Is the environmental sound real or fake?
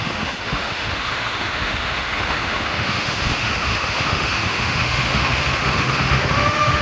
fake